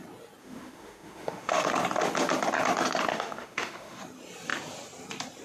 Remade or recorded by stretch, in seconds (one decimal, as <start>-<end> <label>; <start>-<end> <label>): 0.0-0.4 recorded; 0.4-1.7 remade; 1.7-3.1 recorded; 3.1-4.0 remade; 4.0-5.4 recorded